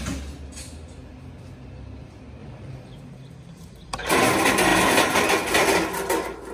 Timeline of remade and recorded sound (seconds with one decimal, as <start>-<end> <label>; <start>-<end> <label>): 0.0-2.4 recorded; 2.4-4.1 remade; 4.1-4.7 recorded; 4.7-5.3 remade; 5.3-6.5 recorded